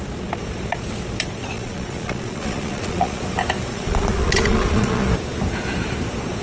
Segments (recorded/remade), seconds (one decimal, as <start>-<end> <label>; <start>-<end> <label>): 0.0-1.4 recorded; 1.4-3.2 remade; 3.2-3.7 recorded; 3.7-5.1 remade; 5.1-6.4 recorded